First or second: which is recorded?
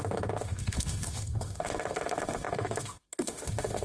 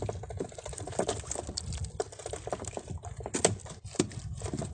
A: second